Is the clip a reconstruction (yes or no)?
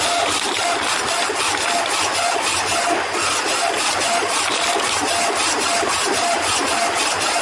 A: no